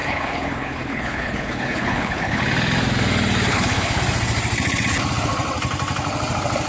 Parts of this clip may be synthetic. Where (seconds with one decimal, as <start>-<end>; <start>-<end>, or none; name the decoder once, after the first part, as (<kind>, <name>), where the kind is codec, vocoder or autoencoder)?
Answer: 0.0-2.4 (codec, HILCodec); 3.5-4.0